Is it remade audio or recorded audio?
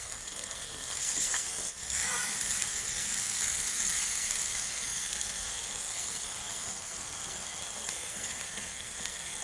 remade